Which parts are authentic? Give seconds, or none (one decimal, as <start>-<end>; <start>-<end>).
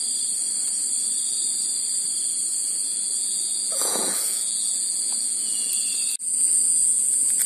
0.0-2.6; 5.9-7.5